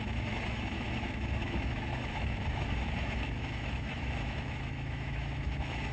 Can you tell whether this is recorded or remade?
remade